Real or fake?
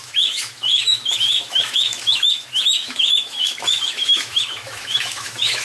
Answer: fake